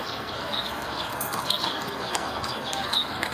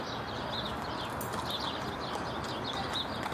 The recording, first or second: second